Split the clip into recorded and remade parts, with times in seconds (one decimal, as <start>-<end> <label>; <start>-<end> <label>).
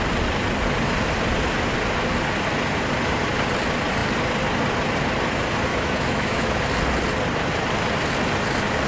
0.0-5.7 recorded; 5.7-6.6 remade; 6.6-8.9 recorded